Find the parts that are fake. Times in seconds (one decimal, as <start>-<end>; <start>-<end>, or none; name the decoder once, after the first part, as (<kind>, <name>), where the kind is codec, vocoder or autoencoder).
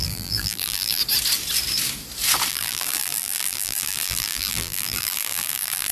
0.0-1.0 (vocoder, BigVGAN v2); 2.5-5.9